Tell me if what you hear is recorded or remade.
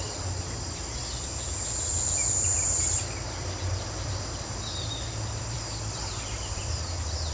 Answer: remade